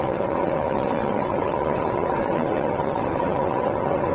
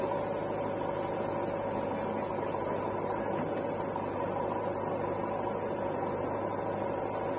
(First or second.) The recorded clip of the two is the second